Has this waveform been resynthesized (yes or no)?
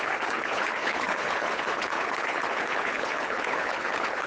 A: yes